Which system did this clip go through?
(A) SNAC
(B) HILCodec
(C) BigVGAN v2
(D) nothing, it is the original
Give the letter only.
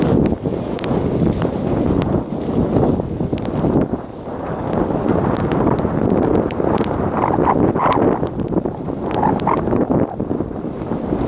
D